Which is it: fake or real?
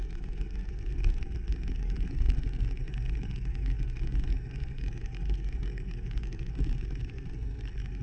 fake